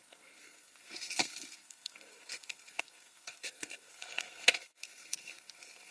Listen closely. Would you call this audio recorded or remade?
remade